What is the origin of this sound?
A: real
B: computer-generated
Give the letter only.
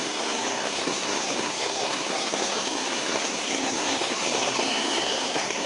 B